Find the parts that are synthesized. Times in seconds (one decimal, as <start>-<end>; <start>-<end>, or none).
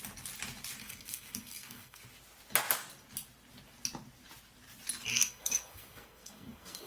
0.8-2.0; 5.1-6.9